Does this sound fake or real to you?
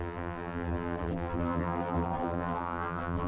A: fake